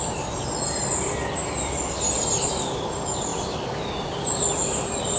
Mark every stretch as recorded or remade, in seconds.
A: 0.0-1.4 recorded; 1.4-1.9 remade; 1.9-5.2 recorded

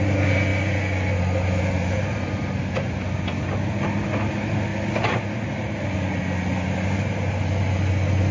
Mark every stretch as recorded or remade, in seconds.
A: 0.0-4.7 recorded; 4.7-5.8 remade; 5.8-8.3 recorded

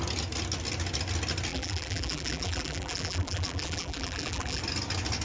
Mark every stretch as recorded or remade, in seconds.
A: 0.0-1.5 recorded; 1.5-4.6 remade; 4.6-5.2 recorded

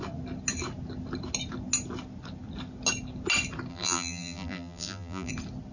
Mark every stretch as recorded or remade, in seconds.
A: 0.0-3.7 recorded; 3.7-5.3 remade; 5.3-5.7 recorded

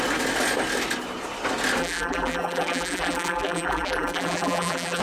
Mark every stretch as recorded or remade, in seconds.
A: 0.0-1.8 recorded; 1.8-5.0 remade